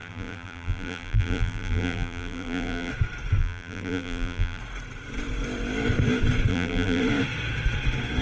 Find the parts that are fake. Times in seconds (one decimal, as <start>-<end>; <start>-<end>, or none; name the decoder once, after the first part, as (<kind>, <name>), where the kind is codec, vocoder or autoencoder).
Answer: 0.0-2.9 (vocoder, BigVGAN v2); 3.4-4.6; 6.5-7.0